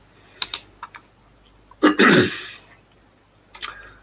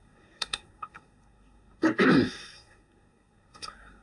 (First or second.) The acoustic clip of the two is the first